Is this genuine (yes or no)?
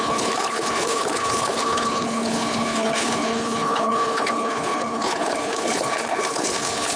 no